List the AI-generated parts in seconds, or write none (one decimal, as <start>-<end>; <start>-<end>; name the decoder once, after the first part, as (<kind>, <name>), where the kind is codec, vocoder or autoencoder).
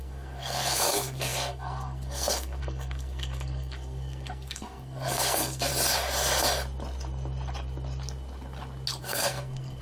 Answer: 0.0-5.7 (codec, SNAC); 9.0-9.8